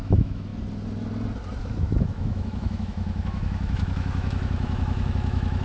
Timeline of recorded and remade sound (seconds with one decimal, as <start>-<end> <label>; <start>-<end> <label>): 0.0-0.5 remade; 0.5-1.6 recorded; 1.6-5.6 remade